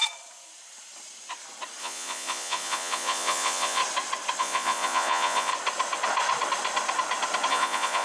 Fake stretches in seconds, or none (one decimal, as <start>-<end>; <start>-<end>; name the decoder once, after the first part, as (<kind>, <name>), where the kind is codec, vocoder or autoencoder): 1.8-3.8 (vocoder, Vocos); 4.4-5.5; 7.5-8.0